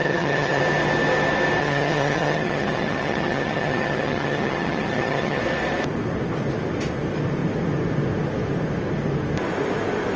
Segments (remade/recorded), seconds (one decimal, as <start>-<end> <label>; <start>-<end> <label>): 0.0-0.6 remade; 0.6-1.6 recorded; 1.6-5.4 remade; 5.4-10.2 recorded